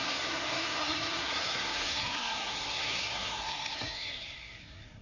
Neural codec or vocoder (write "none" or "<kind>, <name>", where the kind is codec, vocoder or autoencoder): codec, SNAC